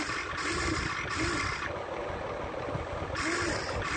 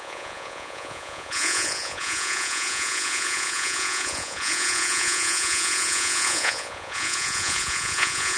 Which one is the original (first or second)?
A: first